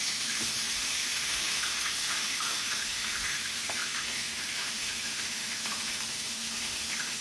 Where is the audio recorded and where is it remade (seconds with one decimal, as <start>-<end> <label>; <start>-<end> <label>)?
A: 0.0-7.2 remade